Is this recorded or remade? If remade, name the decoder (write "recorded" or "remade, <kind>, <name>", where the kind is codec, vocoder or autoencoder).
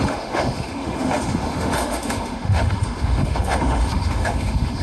remade, autoencoder, DAC-VAE